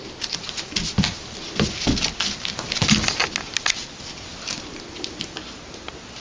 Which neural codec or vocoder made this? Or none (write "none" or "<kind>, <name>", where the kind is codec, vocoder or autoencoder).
none